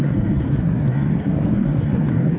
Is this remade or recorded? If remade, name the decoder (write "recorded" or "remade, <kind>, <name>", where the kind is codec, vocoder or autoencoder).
remade, codec, SNAC